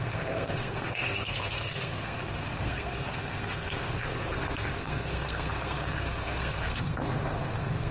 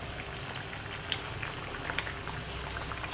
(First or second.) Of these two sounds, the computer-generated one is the first